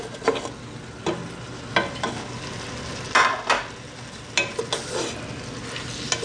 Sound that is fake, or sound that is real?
real